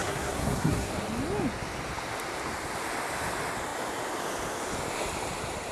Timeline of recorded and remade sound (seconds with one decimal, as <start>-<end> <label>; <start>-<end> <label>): 0.0-0.9 remade; 0.9-5.7 recorded